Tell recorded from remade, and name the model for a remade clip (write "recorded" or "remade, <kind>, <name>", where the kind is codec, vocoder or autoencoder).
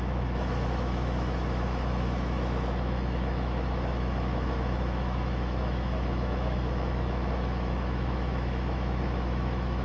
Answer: remade, autoencoder, DAC-VAE